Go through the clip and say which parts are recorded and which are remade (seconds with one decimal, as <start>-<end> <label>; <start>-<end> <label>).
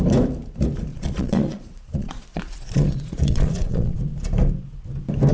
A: 0.0-0.9 recorded; 0.9-4.0 remade; 4.0-5.3 recorded